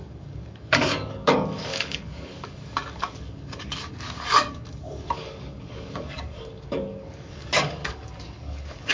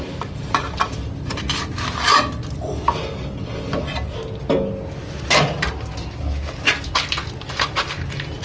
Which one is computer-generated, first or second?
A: first